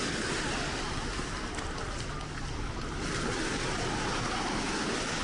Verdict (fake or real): real